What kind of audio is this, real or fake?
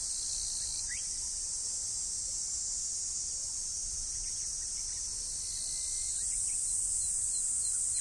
real